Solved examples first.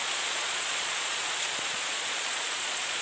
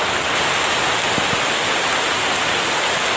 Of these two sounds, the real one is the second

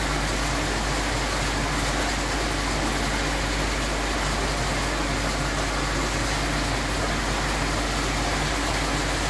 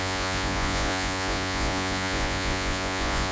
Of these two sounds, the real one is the first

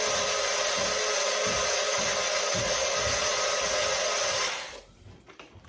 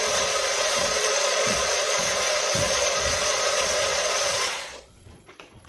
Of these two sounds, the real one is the first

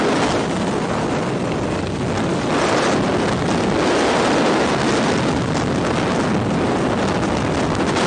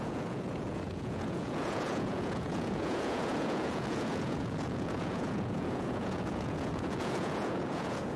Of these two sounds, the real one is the first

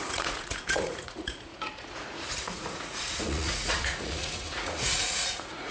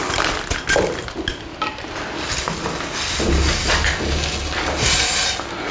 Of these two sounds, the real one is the second